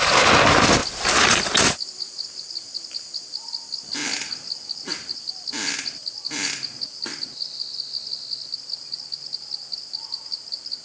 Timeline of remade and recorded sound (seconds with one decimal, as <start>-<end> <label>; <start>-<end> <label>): 0.0-10.8 recorded